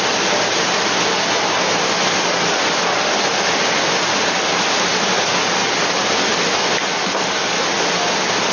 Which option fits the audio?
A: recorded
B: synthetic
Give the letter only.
A